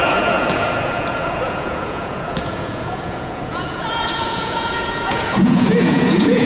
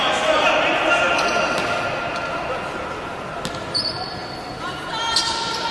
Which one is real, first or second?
second